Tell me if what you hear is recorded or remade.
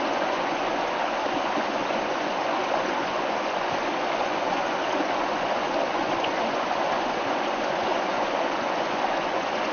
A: remade